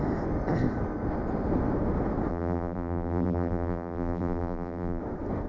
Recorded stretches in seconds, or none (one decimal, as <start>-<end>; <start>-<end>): 0.0-2.3; 5.0-5.5